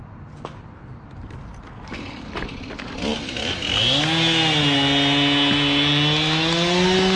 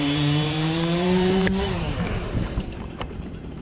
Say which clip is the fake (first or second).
second